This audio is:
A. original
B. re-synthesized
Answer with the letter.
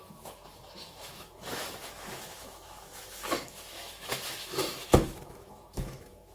B